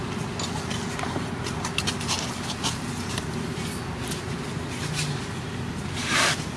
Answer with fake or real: real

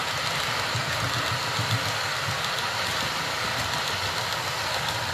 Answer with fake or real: real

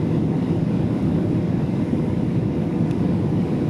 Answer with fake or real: fake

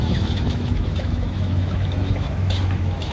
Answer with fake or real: fake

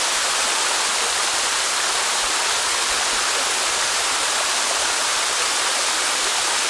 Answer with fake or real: real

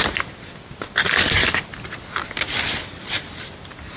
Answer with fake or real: real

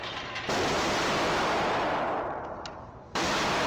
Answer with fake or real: real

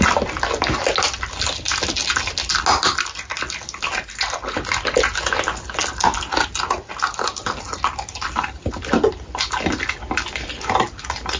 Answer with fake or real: real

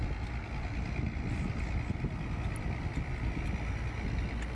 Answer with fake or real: real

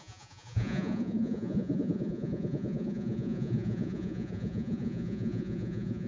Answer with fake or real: fake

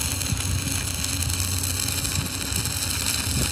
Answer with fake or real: real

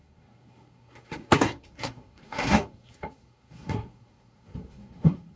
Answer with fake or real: fake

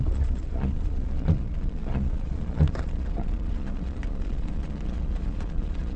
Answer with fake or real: fake